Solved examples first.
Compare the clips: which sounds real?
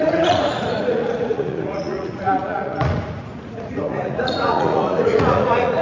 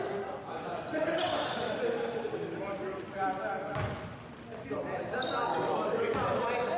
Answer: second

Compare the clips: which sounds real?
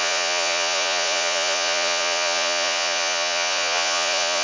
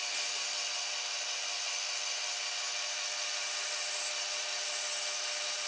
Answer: second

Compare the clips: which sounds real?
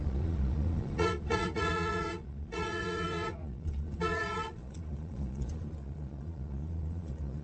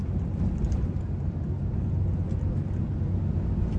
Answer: second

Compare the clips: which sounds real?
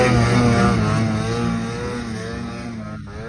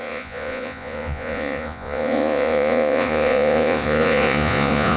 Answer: first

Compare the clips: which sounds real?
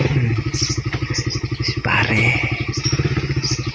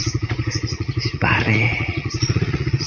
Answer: first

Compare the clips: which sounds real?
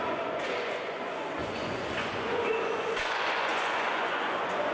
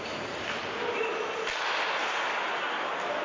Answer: second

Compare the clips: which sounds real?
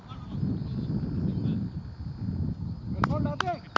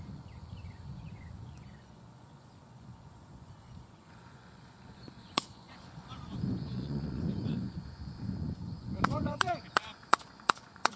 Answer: first